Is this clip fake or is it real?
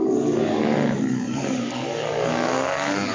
fake